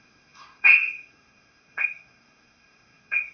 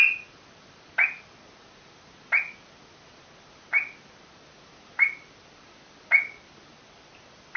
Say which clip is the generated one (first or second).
first